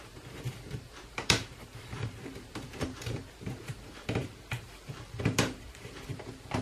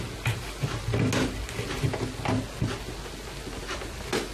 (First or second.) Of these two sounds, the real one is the second